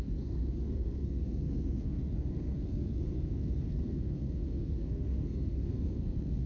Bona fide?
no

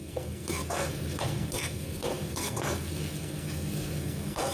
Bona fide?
no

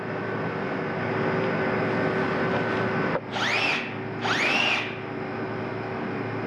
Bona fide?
yes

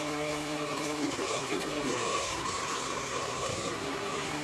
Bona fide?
no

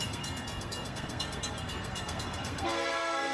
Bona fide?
no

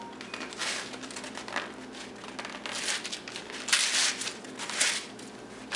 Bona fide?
yes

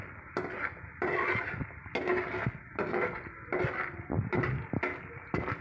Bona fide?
yes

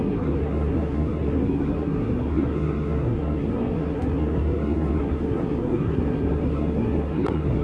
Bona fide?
no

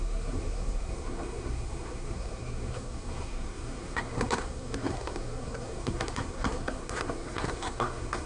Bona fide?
no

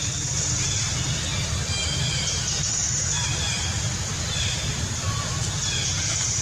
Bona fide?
yes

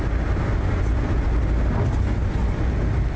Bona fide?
yes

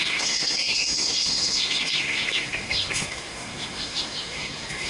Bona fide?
no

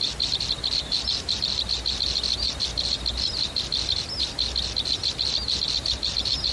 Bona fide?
yes